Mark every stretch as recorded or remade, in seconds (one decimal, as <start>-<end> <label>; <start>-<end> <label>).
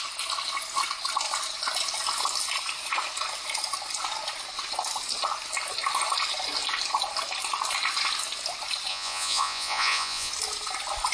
0.0-8.9 recorded; 8.9-10.3 remade; 10.3-11.1 recorded